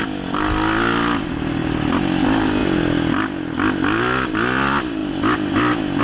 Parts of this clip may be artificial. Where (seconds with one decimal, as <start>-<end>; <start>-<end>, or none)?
none